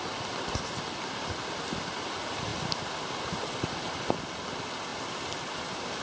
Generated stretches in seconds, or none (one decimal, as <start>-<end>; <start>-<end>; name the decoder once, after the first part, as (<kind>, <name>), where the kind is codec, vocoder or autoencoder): none